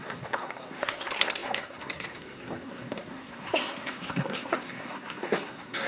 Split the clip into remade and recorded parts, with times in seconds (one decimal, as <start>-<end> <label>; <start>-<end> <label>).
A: 0.0-5.9 remade